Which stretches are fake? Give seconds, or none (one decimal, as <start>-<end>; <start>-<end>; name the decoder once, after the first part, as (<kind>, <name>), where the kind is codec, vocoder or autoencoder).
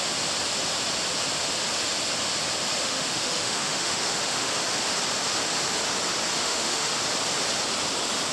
2.8-4.5 (autoencoder, DAC-VAE); 6.4-6.9